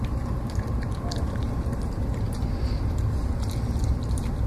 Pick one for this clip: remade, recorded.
remade